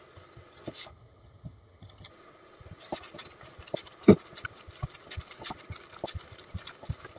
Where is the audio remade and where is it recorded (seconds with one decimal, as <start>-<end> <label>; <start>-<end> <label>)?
0.0-0.9 recorded; 0.9-2.1 remade; 2.1-7.2 recorded